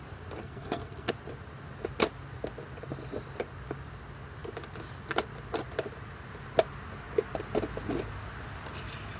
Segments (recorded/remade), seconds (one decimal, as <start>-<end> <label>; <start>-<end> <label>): 0.0-0.4 recorded; 0.4-1.1 remade; 1.1-9.2 recorded